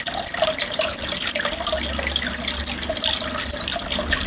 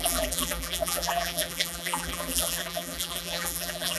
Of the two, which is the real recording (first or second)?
first